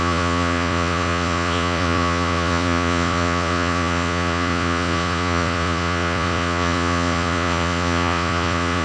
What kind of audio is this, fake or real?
fake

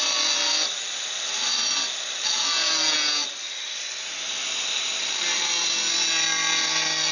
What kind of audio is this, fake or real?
real